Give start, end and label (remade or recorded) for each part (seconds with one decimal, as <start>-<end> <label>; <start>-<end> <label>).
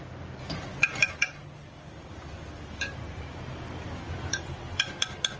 0.0-5.4 recorded